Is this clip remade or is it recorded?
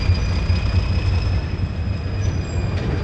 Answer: recorded